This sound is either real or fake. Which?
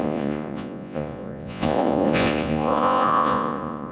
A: fake